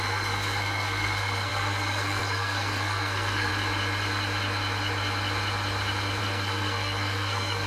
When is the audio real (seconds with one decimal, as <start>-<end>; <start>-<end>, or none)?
3.5-6.2